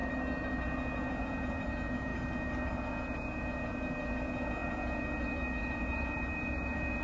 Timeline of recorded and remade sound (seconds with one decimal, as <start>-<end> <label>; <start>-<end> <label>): 0.0-1.1 recorded; 1.1-2.1 remade; 2.1-2.9 recorded; 2.9-7.0 remade

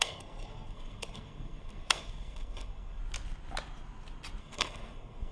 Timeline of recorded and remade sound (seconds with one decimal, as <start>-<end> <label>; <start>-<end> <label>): 0.0-3.0 remade; 3.0-4.4 recorded; 4.4-5.3 remade

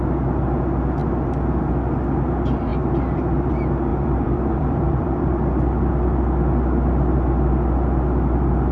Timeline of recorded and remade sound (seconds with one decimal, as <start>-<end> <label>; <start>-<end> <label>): 0.0-3.9 recorded; 3.9-5.9 remade; 5.9-8.7 recorded

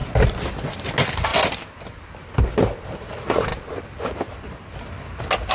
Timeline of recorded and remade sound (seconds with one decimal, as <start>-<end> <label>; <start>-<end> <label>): 0.0-5.5 recorded

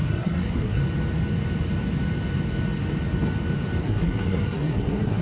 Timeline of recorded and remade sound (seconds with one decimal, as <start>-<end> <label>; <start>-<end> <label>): 0.0-0.8 remade; 0.8-3.8 recorded; 3.8-5.2 remade

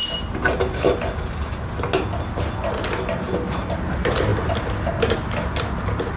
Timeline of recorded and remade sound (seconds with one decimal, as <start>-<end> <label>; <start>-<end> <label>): 0.0-6.2 recorded

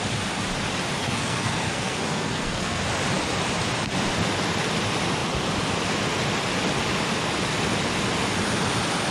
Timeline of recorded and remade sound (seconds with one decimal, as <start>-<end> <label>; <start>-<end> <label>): 0.0-1.0 recorded; 1.0-2.8 remade; 2.8-9.1 recorded